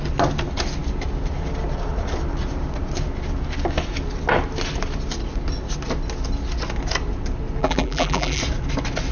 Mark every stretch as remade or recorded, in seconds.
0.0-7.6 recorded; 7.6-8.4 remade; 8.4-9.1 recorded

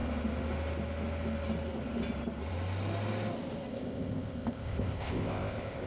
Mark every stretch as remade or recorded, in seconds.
0.0-3.7 recorded; 3.7-5.9 remade

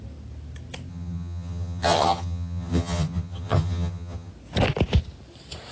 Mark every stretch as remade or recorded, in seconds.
0.0-0.9 recorded; 0.9-4.3 remade; 4.3-5.7 recorded

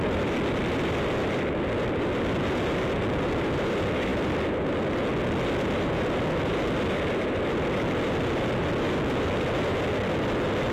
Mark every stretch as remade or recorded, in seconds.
0.0-10.7 recorded

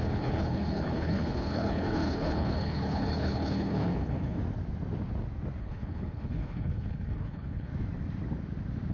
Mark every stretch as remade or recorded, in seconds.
0.0-4.4 remade; 4.4-5.6 recorded; 5.6-7.7 remade; 7.7-8.9 recorded